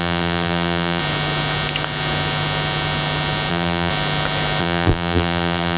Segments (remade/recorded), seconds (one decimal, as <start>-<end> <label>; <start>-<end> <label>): 0.0-1.0 remade; 1.0-3.5 recorded; 3.5-3.9 remade; 3.9-4.6 recorded; 4.6-5.8 remade